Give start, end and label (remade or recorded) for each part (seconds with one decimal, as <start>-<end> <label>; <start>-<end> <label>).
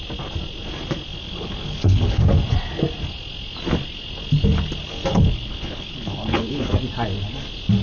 0.0-1.1 recorded; 1.1-2.2 remade; 2.2-5.1 recorded; 5.1-6.7 remade; 6.7-7.8 recorded